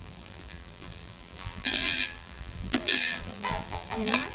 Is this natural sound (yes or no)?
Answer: no